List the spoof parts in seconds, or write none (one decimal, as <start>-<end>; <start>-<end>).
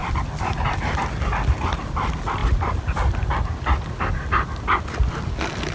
none